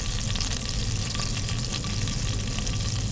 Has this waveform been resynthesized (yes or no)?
no